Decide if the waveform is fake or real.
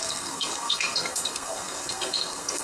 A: fake